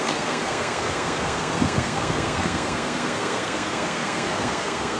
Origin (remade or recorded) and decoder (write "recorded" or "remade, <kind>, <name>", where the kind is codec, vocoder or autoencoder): remade, codec, SNAC